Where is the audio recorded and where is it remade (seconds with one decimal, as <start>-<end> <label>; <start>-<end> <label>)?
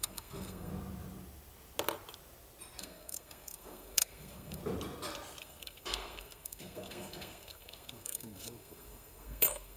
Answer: 0.0-0.7 remade; 0.7-2.8 recorded; 2.8-4.6 remade; 4.6-5.4 recorded; 5.4-9.8 remade